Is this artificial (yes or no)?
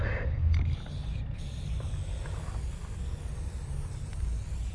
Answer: no